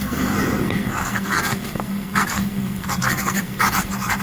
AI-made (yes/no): yes